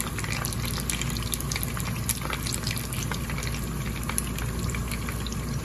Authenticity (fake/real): real